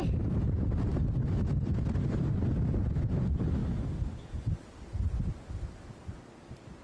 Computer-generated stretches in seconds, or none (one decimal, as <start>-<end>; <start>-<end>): none